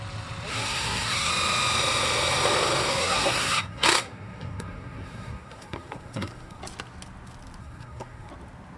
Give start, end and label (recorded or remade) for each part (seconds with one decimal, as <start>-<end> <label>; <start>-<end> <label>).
0.0-0.5 recorded; 0.5-1.3 remade; 1.3-2.9 recorded; 2.9-6.6 remade; 6.6-7.6 recorded; 7.6-8.3 remade; 8.3-8.8 recorded